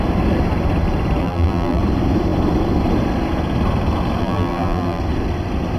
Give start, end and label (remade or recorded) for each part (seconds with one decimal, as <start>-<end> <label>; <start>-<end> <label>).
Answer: 0.0-1.2 recorded; 1.2-1.8 remade; 1.8-4.2 recorded; 4.2-5.0 remade; 5.0-5.8 recorded